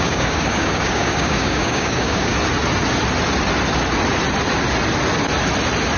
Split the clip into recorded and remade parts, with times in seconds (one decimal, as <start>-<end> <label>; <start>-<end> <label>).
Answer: 0.0-2.3 remade; 2.3-6.0 recorded